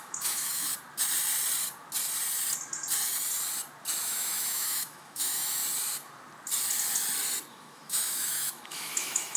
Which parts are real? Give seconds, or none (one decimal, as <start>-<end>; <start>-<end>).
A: 0.7-4.0; 5.6-7.5